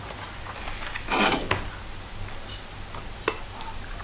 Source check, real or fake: real